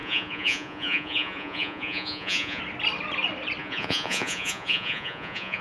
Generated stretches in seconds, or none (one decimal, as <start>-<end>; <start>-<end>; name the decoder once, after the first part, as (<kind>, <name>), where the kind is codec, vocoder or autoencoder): 0.0-2.6 (vocoder, Vocos); 3.6-5.6